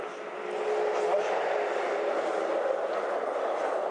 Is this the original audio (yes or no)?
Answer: yes